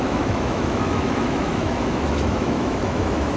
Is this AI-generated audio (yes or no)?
yes